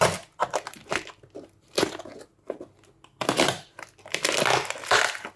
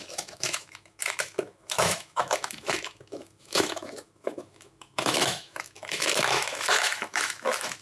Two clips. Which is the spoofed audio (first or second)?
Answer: second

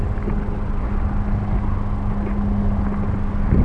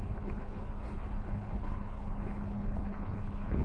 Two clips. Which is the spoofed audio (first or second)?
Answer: second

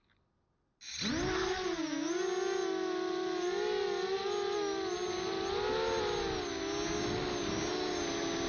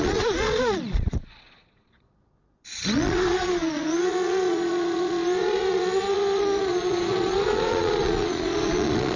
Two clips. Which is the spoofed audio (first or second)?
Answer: second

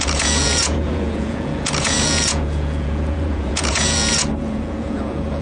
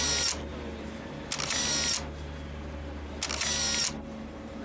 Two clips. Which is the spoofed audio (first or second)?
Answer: first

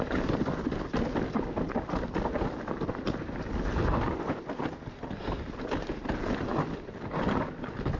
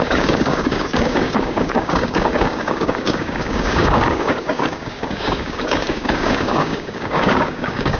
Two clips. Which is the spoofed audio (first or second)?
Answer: second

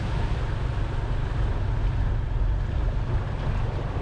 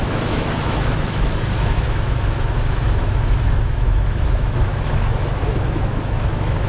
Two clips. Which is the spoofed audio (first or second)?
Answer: second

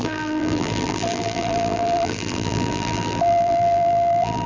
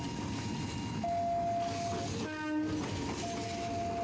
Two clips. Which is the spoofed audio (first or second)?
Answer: first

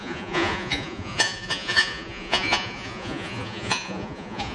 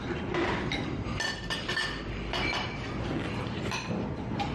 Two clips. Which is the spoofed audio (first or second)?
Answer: first